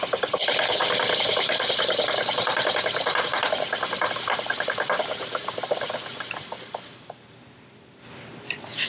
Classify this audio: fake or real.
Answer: real